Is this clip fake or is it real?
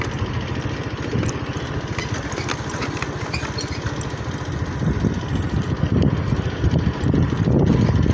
real